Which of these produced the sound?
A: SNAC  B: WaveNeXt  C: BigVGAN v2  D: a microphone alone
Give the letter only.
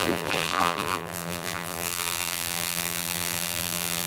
C